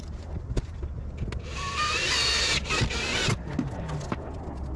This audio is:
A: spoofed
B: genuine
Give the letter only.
B